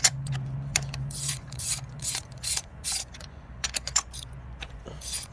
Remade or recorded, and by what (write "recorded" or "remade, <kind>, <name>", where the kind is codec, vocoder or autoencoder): remade, vocoder, Vocos